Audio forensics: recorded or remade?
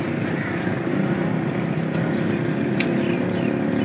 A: recorded